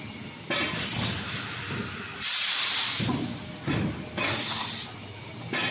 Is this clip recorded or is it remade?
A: recorded